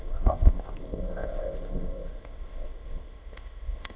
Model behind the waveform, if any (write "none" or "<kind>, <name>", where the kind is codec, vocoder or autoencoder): codec, ZipCodec